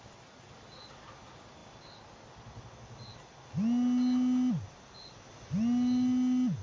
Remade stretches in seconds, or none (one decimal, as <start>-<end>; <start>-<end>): none